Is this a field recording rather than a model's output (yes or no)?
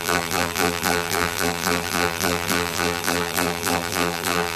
no